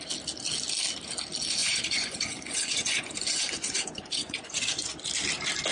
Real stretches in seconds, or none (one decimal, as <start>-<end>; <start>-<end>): 0.0-1.6; 5.0-5.7